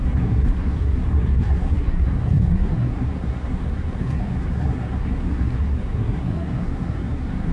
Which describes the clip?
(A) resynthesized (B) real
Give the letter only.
A